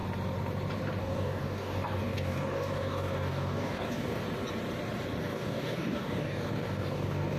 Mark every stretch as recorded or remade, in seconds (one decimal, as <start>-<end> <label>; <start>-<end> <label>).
0.0-1.0 recorded; 1.0-4.2 remade; 4.2-5.2 recorded; 5.2-7.4 remade

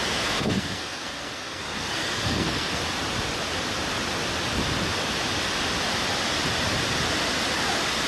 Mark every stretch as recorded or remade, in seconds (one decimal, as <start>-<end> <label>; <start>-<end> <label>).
0.0-2.8 remade; 2.8-8.1 recorded